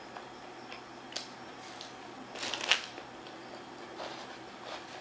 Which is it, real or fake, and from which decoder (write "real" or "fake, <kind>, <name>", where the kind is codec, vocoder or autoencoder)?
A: real